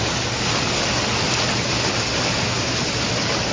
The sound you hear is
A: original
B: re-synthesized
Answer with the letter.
A